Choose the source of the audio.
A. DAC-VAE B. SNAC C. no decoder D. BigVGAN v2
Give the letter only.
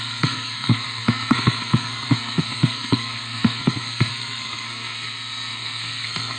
B